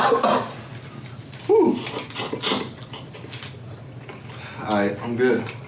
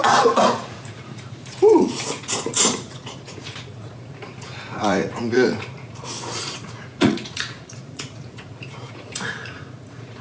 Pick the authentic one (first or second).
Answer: first